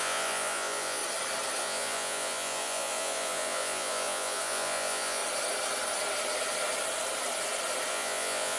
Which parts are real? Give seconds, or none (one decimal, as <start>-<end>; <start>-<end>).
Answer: 1.0-1.6; 5.2-7.9